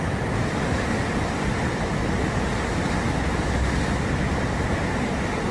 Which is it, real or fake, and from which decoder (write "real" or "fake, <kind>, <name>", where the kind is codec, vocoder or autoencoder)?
real